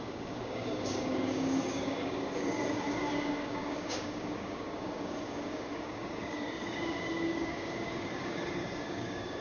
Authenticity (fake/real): fake